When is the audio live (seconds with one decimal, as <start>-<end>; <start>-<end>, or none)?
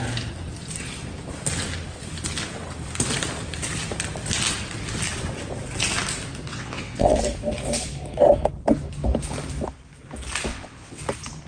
0.0-6.5; 7.2-10.5; 11.0-11.5